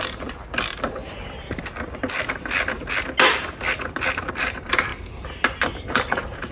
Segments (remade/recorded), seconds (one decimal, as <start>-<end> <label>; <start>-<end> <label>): 0.0-1.0 remade; 1.0-4.3 recorded; 4.3-4.9 remade; 4.9-5.9 recorded; 5.9-6.5 remade